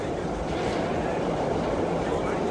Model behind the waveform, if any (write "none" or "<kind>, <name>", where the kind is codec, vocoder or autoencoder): vocoder, BigVGAN v2